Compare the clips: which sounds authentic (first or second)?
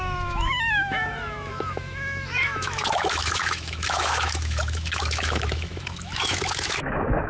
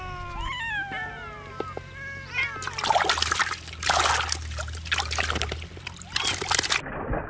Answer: second